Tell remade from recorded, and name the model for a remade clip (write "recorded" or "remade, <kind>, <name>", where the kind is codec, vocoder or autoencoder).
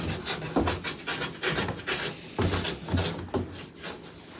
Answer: recorded